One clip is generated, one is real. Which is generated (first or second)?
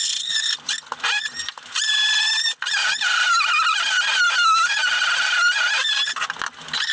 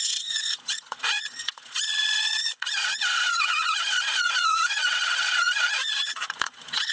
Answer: second